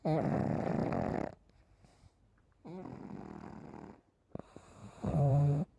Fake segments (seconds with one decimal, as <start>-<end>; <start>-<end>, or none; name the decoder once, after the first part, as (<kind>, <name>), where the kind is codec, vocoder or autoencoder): 4.8-5.8 (vocoder, Vocos)